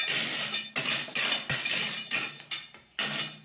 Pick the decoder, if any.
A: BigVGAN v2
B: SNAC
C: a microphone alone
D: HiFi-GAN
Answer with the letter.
C